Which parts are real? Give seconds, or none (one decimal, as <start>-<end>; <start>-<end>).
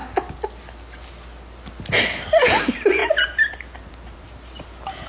0.0-2.6